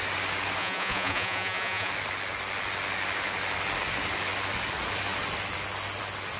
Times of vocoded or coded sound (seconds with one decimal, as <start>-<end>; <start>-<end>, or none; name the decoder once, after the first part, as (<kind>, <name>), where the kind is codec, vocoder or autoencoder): 0.6-1.9 (vocoder, Vocos)